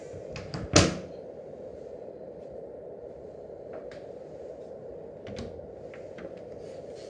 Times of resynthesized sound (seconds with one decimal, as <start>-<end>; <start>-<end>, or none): 1.7-3.9